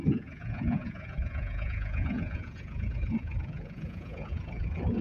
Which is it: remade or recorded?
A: remade